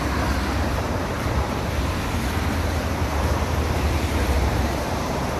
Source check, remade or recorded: remade